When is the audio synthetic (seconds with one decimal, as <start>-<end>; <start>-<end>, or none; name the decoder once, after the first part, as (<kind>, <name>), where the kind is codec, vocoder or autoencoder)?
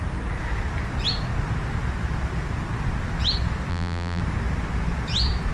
3.7-4.2 (vocoder, BigVGAN v2)